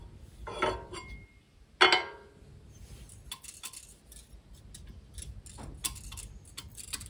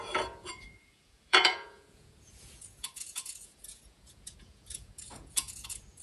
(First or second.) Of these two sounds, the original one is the first